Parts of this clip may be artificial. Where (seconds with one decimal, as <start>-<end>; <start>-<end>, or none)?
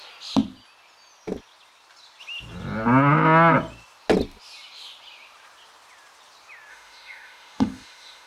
6.7-8.3